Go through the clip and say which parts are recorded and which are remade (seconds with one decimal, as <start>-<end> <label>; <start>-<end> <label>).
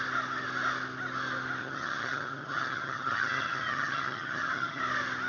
0.0-1.6 recorded; 1.6-4.8 remade; 4.8-5.3 recorded